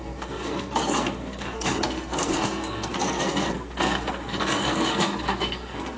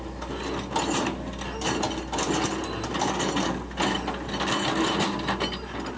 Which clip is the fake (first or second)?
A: first